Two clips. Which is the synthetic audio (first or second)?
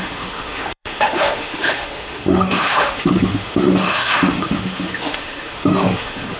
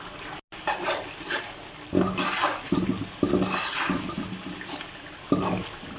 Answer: first